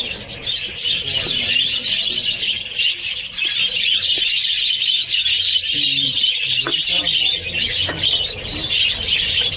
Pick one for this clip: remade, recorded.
recorded